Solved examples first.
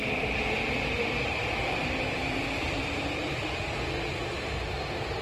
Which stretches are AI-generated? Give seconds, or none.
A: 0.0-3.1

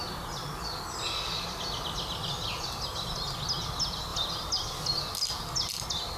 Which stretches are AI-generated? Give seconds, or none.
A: none